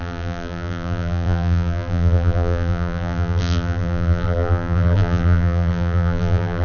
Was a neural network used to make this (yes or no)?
yes